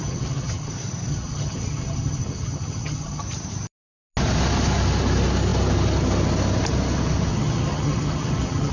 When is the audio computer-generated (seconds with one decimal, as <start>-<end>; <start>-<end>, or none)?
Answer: 0.0-0.7; 1.1-3.2; 7.3-8.7